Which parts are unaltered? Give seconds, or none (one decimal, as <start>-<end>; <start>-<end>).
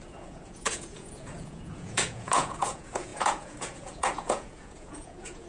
none